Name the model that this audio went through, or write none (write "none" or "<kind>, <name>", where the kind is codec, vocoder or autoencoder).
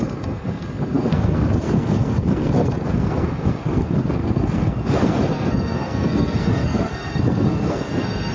codec, SNAC